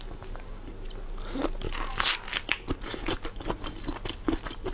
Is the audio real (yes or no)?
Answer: yes